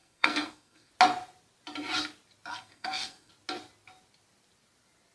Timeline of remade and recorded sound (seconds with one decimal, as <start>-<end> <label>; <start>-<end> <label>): 0.0-0.9 remade; 0.9-2.5 recorded; 2.5-3.3 remade; 3.3-5.1 recorded

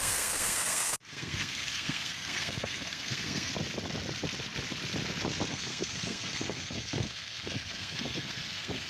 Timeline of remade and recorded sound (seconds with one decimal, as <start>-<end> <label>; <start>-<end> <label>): 0.0-3.5 remade; 3.5-5.5 recorded; 5.5-8.9 remade

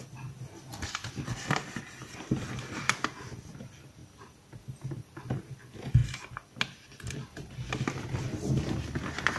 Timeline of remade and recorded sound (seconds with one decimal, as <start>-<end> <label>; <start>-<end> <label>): 0.0-9.4 recorded

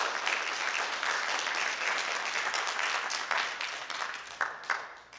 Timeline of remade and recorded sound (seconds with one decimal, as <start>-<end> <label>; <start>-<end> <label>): 0.0-5.2 recorded

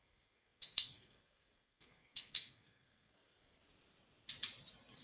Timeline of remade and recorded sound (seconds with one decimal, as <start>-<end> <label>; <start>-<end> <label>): 0.0-3.6 remade; 3.6-5.0 recorded

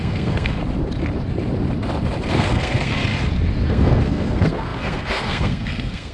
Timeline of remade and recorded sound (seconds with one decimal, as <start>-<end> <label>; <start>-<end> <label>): 0.0-0.6 remade; 0.6-2.3 recorded; 2.3-3.0 remade; 3.0-3.7 recorded; 3.7-6.1 remade